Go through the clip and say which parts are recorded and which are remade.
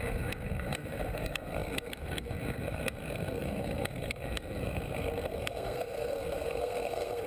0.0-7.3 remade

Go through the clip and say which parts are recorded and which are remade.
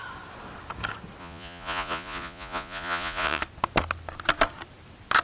0.0-1.2 recorded; 1.2-3.4 remade; 3.4-5.2 recorded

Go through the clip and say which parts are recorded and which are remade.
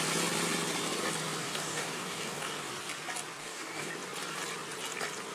0.0-1.4 recorded; 1.4-2.7 remade; 2.7-3.4 recorded; 3.4-3.9 remade; 3.9-5.3 recorded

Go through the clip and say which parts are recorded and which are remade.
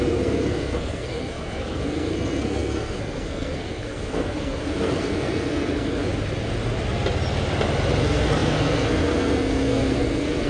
0.0-6.1 remade; 6.1-8.0 recorded; 8.0-10.5 remade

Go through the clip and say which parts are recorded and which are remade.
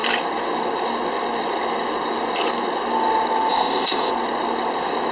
0.0-3.5 recorded; 3.5-4.1 remade; 4.1-5.1 recorded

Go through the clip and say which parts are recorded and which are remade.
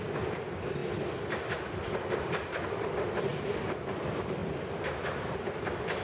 0.0-3.3 remade; 3.3-3.8 recorded; 3.8-4.4 remade; 4.4-5.4 recorded; 5.4-6.0 remade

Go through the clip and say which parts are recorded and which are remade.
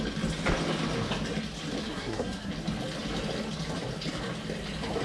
0.0-1.8 recorded; 1.8-2.5 remade; 2.5-5.0 recorded